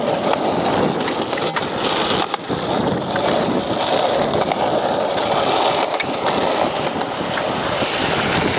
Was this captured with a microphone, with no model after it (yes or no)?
yes